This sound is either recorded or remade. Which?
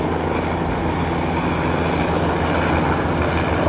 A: recorded